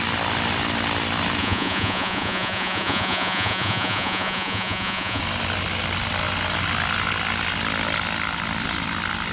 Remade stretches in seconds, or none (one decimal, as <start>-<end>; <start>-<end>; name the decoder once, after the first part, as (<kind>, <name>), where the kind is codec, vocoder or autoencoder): 1.4-5.2 (vocoder, Vocos)